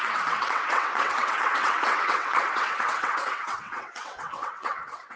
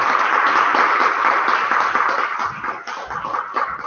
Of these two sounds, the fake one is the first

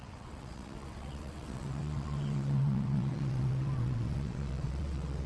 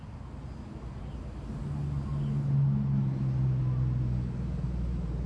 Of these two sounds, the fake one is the first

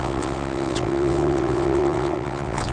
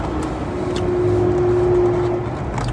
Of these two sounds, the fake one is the first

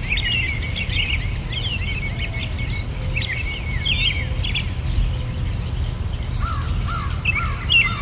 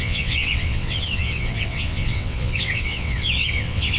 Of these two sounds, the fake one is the second